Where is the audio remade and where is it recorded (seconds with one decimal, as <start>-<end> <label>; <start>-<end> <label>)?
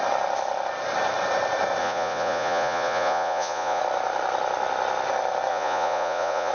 0.0-1.8 recorded; 1.8-3.8 remade; 3.8-5.5 recorded; 5.5-6.5 remade